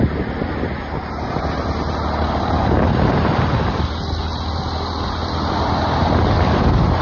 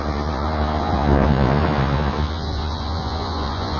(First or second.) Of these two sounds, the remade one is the second